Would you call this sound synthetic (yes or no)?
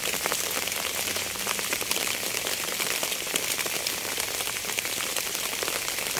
yes